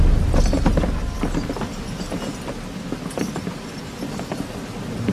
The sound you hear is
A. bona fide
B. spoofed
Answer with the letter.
A